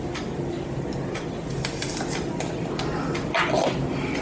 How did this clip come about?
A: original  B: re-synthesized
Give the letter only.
A